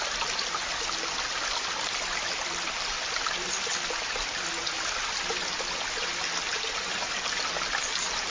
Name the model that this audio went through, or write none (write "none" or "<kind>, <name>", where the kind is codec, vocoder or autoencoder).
none